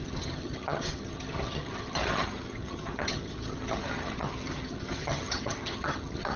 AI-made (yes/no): yes